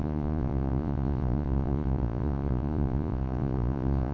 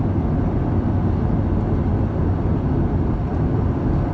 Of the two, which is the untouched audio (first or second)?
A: second